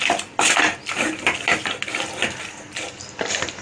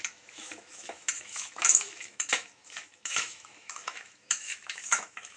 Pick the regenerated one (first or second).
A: second